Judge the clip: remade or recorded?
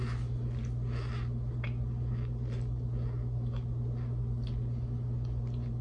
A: recorded